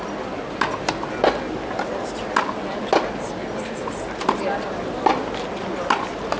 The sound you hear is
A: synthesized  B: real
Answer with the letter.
B